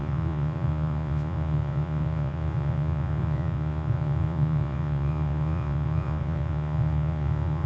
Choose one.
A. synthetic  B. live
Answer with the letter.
A